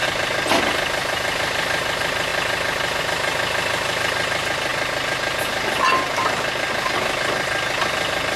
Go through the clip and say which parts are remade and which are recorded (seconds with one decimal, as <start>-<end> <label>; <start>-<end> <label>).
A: 0.0-8.4 recorded